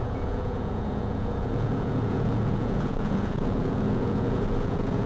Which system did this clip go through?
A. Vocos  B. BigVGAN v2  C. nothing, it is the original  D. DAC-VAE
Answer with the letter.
A